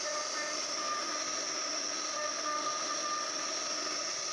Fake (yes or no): no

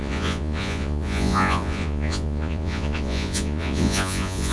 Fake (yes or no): yes